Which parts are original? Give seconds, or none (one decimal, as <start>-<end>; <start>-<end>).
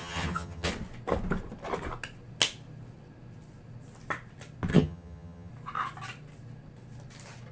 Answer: 0.7-4.7; 5.5-7.5